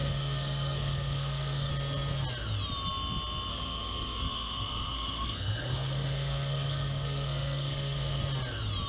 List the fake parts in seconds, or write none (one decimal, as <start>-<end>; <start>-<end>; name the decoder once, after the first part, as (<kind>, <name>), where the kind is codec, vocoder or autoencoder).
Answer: 0.0-1.7 (codec, SNAC); 3.5-8.2